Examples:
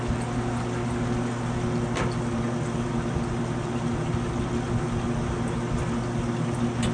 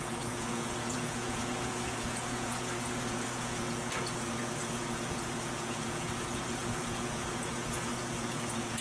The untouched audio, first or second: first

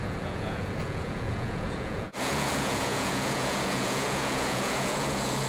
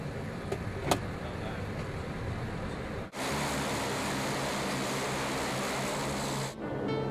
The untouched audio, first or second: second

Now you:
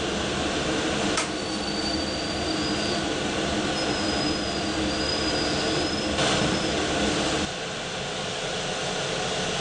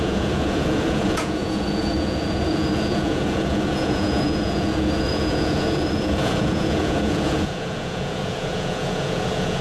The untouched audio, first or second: first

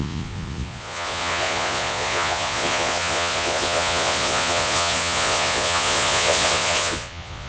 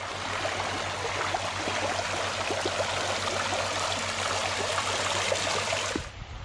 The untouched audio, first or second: second